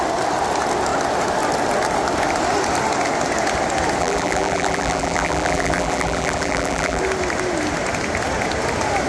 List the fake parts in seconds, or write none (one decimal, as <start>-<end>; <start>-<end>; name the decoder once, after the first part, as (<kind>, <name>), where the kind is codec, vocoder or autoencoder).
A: 4.0-7.0 (vocoder, BigVGAN v2)